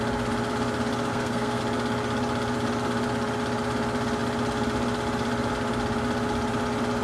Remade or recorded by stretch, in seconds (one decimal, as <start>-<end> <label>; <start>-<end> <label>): 0.0-1.1 recorded; 1.1-1.6 remade; 1.6-7.0 recorded